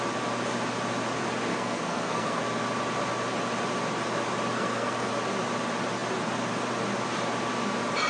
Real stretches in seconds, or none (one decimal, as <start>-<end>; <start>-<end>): 0.0-1.5; 2.4-4.5; 5.1-8.1